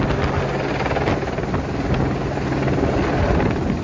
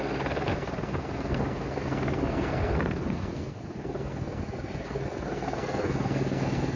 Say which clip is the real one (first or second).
first